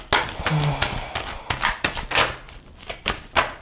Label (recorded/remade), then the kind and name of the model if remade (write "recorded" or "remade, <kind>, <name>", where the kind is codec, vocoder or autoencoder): recorded